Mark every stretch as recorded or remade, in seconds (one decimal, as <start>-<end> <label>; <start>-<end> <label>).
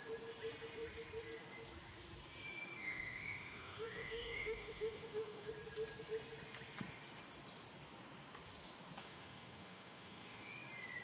0.0-2.8 recorded; 2.8-5.5 remade; 5.5-9.0 recorded; 9.0-10.5 remade; 10.5-11.0 recorded